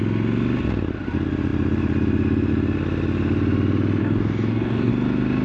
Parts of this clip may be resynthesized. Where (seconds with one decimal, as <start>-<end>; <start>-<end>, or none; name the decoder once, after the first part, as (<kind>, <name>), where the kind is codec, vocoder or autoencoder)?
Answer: 4.0-4.9 (codec, DAC)